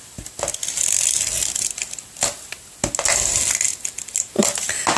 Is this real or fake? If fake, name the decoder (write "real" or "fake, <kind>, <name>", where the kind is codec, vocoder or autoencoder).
real